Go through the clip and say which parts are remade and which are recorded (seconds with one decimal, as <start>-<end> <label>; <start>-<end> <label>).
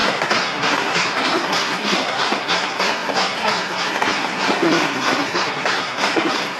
0.0-6.6 remade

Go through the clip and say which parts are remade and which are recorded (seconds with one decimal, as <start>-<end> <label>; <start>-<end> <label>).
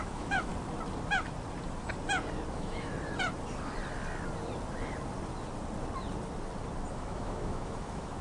0.0-0.5 remade; 0.5-2.5 recorded; 2.5-2.9 remade; 2.9-6.9 recorded; 6.9-8.2 remade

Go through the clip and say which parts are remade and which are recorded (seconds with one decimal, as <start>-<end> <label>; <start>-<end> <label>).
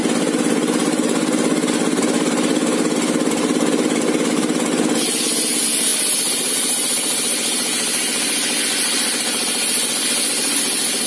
0.0-11.1 recorded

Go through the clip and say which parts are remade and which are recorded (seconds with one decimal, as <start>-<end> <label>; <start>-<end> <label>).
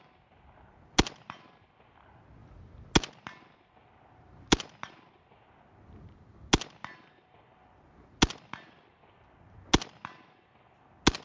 0.0-11.2 recorded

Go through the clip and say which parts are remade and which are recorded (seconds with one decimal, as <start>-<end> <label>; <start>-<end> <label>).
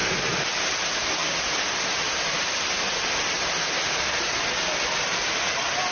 0.0-5.9 recorded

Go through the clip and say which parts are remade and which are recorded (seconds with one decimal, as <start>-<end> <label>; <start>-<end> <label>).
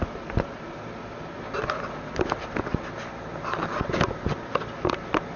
0.0-5.4 recorded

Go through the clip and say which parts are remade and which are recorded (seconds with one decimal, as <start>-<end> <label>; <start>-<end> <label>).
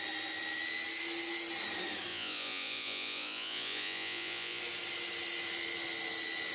0.0-2.1 recorded; 2.1-4.6 remade; 4.6-6.5 recorded